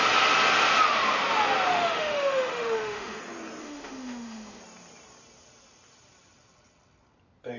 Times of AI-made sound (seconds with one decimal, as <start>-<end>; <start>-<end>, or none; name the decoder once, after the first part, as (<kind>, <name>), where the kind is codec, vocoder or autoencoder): 1.7-3.2 (autoencoder, DAC-VAE); 3.6-4.6